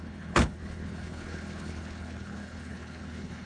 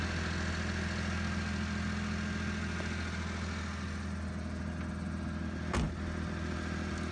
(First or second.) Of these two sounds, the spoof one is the first